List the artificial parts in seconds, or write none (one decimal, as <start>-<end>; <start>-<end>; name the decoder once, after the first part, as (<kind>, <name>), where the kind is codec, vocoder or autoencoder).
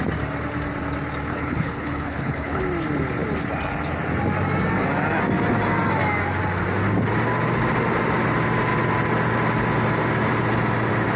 1.3-2.6 (codec, HILCodec)